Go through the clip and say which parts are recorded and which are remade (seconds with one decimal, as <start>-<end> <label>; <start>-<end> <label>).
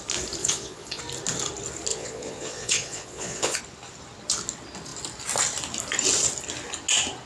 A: 0.0-0.4 recorded; 0.4-1.0 remade; 1.0-1.9 recorded; 1.9-3.6 remade; 3.6-7.3 recorded